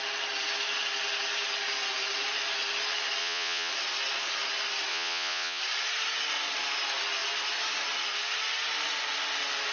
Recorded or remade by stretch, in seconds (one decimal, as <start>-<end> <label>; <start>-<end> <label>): 0.0-3.2 recorded; 3.2-3.7 remade; 3.7-4.9 recorded; 4.9-5.6 remade; 5.6-9.7 recorded